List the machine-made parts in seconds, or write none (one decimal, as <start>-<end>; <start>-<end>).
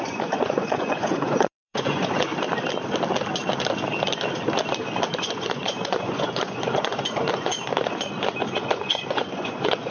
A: 0.0-2.3; 5.2-7.5; 8.6-9.9